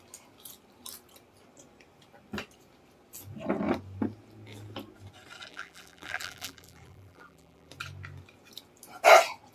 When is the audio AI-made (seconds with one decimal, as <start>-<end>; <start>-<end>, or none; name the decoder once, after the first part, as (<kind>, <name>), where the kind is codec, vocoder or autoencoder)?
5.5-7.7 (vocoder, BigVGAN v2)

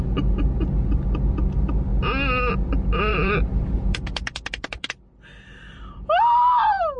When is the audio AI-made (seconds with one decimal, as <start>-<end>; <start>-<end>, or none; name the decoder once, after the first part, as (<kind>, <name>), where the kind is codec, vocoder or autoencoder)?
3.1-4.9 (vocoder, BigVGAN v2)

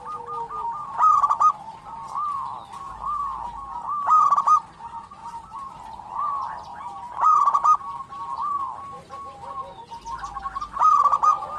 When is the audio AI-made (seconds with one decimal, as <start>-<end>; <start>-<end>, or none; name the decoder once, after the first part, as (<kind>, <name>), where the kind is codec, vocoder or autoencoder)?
5.2-5.7 (vocoder, BigVGAN v2)

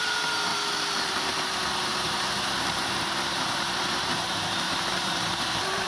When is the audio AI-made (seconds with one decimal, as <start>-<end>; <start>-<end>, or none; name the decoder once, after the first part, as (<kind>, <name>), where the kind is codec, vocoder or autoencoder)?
0.0-0.5 (vocoder, BigVGAN v2); 1.1-5.9

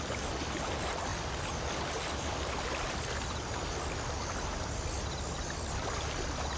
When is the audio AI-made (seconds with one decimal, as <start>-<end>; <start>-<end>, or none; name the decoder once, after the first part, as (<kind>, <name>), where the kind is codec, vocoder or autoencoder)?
none